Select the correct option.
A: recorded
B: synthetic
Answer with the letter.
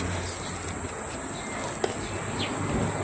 A